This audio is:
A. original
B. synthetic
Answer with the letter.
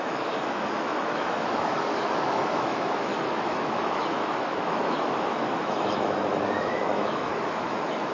B